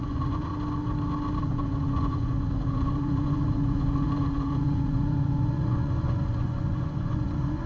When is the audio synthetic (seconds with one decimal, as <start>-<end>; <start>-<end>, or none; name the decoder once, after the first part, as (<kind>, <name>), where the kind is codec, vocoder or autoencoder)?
0.0-0.5 (vocoder, Vocos); 1.4-7.7